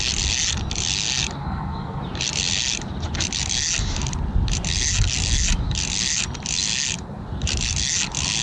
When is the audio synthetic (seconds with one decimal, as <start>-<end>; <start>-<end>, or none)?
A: 1.4-2.0